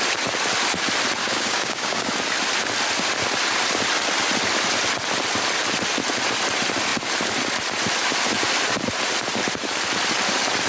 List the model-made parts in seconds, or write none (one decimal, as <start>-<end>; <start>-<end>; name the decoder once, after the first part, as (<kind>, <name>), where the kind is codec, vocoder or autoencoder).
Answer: 1.2-2.1 (codec, DAC)